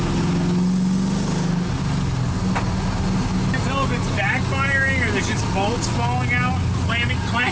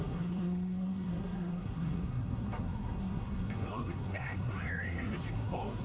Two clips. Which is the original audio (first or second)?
first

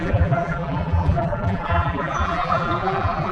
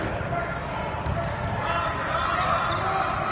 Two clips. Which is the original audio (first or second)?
second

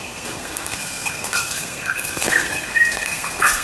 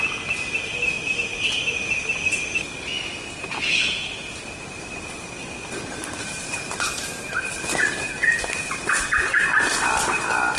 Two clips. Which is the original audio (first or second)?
second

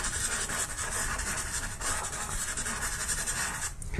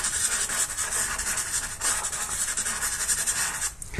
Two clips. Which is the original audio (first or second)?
second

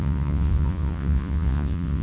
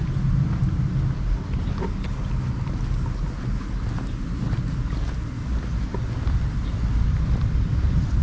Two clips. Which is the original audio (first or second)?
second